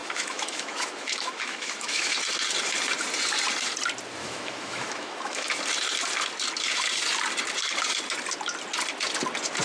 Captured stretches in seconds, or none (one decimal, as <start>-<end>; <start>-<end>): 2.2-4.2; 5.5-9.6